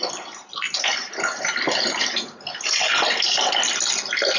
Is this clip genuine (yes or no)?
yes